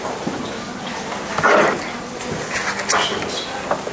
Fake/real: real